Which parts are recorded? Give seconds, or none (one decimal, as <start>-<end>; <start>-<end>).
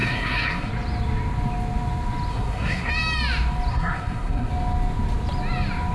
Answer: 0.7-2.3; 2.9-3.7; 4.5-5.9